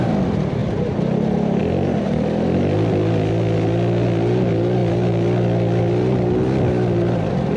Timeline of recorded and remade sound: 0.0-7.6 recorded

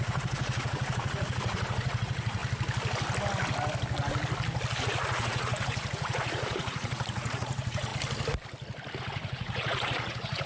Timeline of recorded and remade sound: 0.0-2.4 remade; 2.4-4.8 recorded; 4.8-7.9 remade; 7.9-9.0 recorded; 9.0-10.5 remade

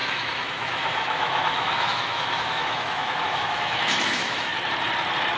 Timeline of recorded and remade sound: 0.0-4.5 remade; 4.5-5.4 recorded

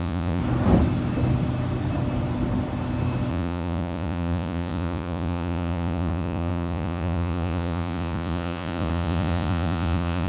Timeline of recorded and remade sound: 0.0-0.4 remade; 0.4-3.3 recorded; 3.3-10.3 remade

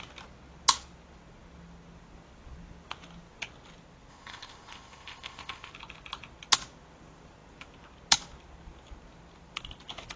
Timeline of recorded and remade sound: 0.0-4.1 recorded; 4.1-5.7 remade; 5.7-10.2 recorded

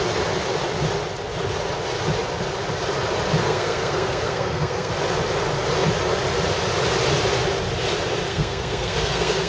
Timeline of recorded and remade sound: 0.0-3.4 recorded; 3.4-4.9 remade; 4.9-8.3 recorded; 8.3-9.5 remade

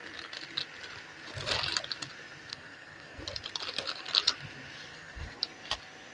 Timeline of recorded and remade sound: 0.0-2.5 recorded; 2.5-3.2 remade; 3.2-4.9 recorded; 4.9-5.4 remade; 5.4-6.1 recorded

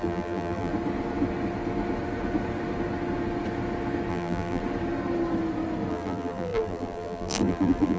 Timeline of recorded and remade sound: 0.0-0.7 remade; 0.7-4.1 recorded; 4.1-4.6 remade; 4.6-5.9 recorded; 5.9-8.0 remade